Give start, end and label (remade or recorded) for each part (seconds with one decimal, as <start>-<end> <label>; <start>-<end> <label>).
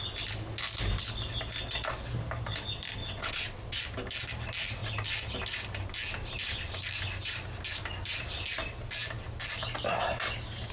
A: 0.0-3.0 recorded; 3.0-3.8 remade; 3.8-10.7 recorded